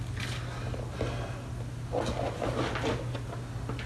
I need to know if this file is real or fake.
real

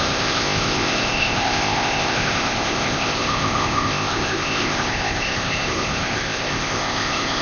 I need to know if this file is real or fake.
fake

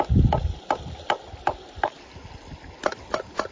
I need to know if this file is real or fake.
real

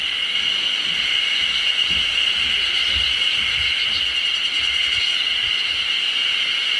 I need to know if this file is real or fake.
real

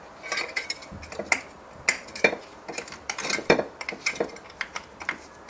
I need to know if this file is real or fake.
fake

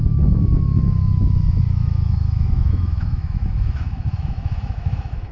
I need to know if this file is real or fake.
fake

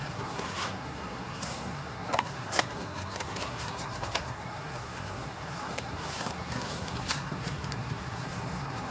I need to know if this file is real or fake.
fake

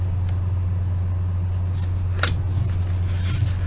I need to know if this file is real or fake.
real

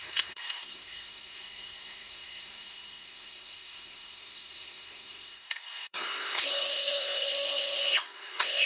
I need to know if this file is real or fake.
fake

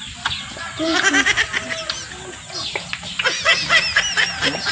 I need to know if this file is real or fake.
real